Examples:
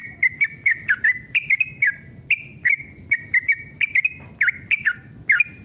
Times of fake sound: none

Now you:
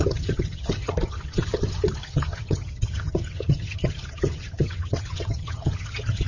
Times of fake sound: 0.0-6.3

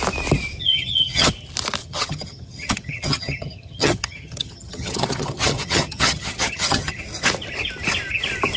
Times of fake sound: 0.6-1.3; 1.8-7.0

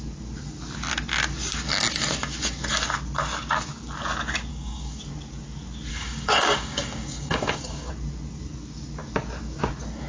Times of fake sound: 4.5-5.0; 5.9-7.9

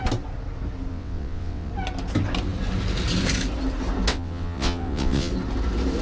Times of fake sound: 0.9-1.7; 4.1-5.3

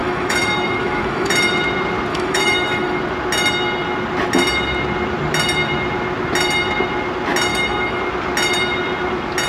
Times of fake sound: 0.0-1.3; 2.1-3.0; 7.5-8.0

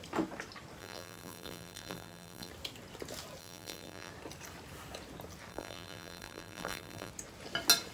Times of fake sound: 0.8-2.5; 3.4-4.1; 5.5-7.1

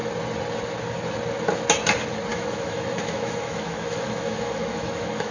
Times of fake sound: 2.3-5.3